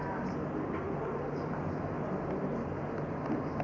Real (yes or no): yes